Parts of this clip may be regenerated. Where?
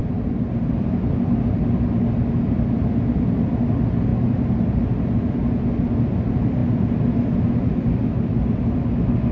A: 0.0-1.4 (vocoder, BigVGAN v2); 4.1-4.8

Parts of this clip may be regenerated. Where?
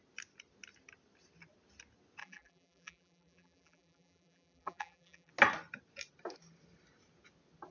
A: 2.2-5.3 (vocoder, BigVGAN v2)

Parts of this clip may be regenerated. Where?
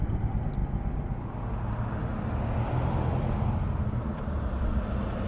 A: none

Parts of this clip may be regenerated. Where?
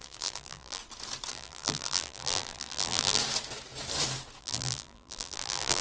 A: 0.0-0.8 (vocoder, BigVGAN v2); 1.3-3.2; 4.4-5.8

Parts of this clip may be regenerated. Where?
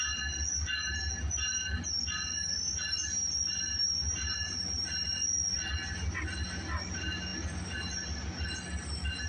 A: none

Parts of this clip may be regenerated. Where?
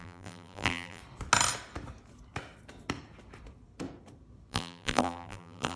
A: 0.0-1.0 (vocoder, BigVGAN v2); 4.5-5.8